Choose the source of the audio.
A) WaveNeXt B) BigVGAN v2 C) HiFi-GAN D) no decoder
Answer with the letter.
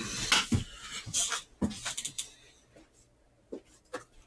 D